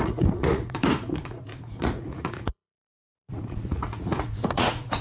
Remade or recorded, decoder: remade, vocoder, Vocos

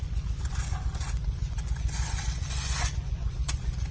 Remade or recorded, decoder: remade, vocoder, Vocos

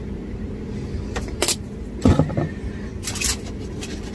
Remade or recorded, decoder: recorded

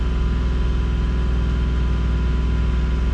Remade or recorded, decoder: recorded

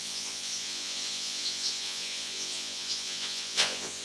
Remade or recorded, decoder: remade, vocoder, Vocos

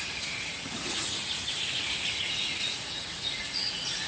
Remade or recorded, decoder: remade, vocoder, Vocos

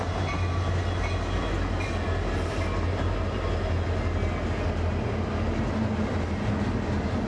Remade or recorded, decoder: recorded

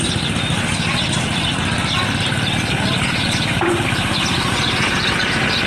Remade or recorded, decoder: recorded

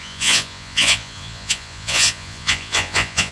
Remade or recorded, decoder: remade, vocoder, Vocos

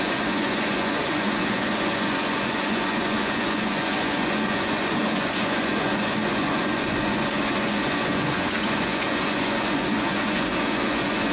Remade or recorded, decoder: remade, vocoder, Vocos